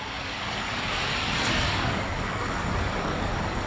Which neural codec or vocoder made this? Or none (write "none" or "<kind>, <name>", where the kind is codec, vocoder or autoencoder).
codec, DAC